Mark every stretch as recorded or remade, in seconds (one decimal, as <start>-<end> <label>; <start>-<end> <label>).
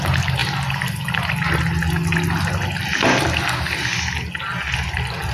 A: 0.0-5.3 recorded